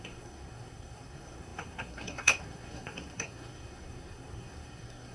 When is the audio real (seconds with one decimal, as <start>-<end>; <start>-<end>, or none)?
none